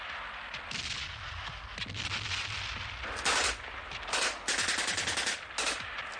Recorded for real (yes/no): yes